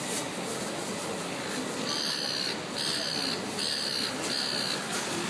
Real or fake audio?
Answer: real